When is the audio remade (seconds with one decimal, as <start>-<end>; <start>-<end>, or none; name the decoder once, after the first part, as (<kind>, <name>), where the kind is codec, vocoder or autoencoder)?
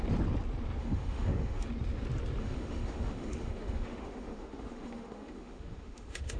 0.8-1.7 (autoencoder, DAC-VAE); 2.4-6.4